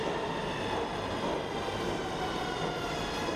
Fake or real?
real